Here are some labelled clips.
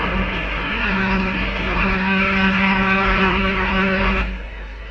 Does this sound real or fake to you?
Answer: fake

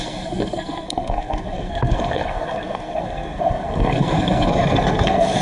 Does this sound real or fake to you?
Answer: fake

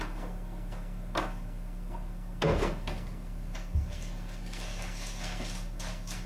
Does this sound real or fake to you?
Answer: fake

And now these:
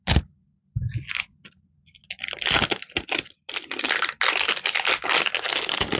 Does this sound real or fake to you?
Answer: real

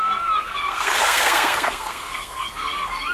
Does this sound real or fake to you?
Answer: fake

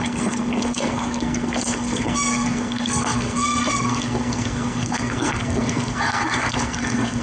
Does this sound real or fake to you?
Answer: fake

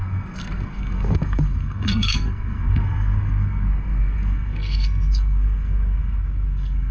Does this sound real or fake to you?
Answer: fake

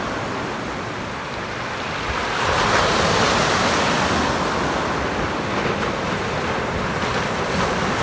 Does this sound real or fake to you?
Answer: real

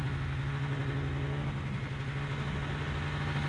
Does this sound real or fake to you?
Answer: real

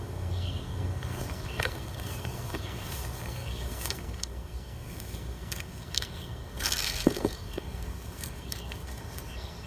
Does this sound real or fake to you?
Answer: fake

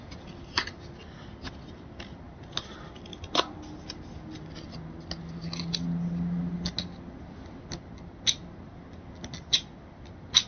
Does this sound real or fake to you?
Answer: real